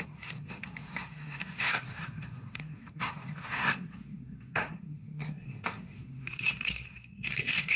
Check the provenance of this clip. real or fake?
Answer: fake